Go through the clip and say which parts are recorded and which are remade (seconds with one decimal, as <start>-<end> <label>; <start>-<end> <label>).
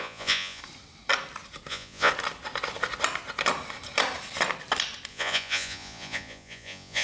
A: 0.0-0.6 remade; 0.6-1.7 recorded; 1.7-2.1 remade; 2.1-5.1 recorded; 5.1-7.0 remade